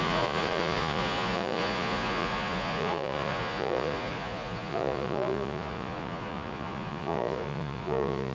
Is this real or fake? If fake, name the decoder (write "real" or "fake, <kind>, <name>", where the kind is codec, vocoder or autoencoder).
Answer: fake, vocoder, Vocos